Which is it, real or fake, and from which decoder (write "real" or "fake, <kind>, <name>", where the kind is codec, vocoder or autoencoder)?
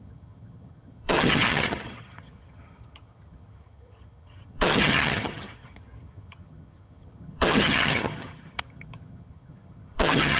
fake, vocoder, HiFi-GAN